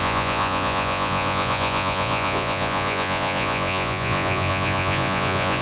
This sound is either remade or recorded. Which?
remade